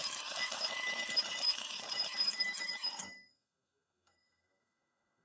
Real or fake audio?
fake